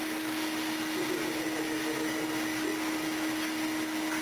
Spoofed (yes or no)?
no